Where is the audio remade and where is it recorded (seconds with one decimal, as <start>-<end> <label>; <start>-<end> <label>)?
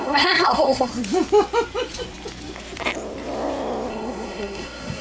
0.0-0.9 remade; 0.9-3.9 recorded; 3.9-5.0 remade